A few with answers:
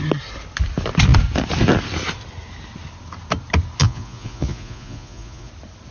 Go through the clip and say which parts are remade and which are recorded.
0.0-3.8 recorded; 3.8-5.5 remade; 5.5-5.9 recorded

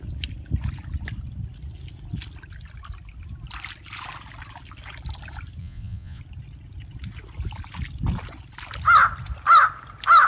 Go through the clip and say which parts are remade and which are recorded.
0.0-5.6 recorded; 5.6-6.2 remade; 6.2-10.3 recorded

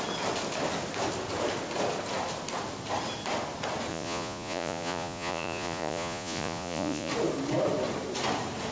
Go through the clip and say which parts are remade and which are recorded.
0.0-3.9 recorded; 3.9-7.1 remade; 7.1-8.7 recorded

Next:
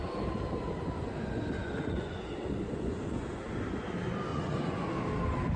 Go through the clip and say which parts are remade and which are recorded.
0.0-1.6 recorded; 1.6-3.4 remade; 3.4-4.3 recorded; 4.3-4.9 remade; 4.9-5.6 recorded

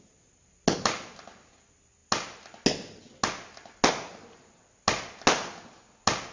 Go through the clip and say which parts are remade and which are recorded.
0.0-6.3 recorded